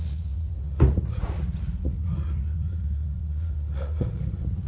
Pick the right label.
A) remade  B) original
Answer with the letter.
A